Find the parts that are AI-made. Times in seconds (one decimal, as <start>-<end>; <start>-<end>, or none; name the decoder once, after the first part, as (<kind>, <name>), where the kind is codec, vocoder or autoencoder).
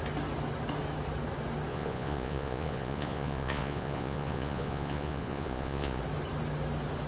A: 1.7-6.0 (vocoder, Vocos)